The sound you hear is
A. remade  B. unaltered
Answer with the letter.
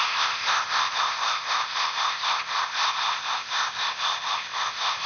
A